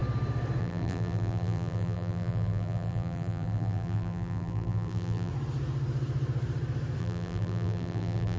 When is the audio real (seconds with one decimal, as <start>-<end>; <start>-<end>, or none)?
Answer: 0.0-0.6; 5.3-7.0